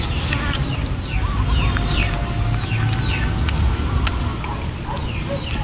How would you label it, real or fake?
real